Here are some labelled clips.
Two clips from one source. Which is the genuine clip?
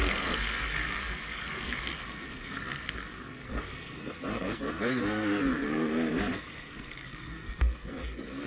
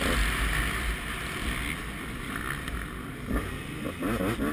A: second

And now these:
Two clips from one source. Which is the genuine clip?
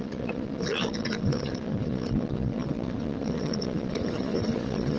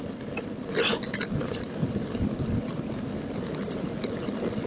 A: second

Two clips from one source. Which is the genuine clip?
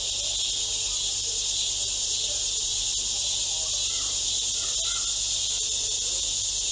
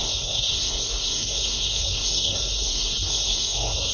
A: first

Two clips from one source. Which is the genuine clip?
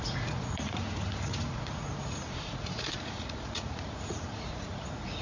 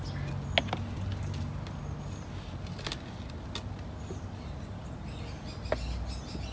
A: second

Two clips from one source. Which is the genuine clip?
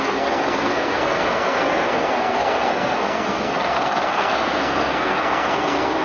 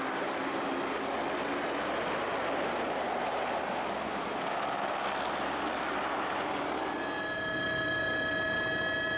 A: second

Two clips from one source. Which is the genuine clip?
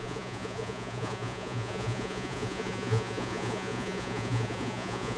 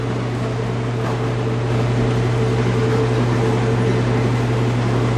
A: second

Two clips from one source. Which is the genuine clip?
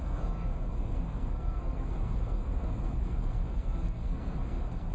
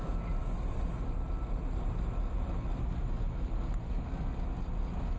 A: second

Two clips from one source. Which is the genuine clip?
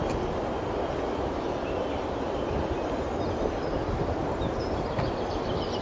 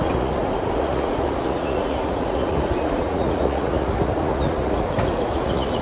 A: first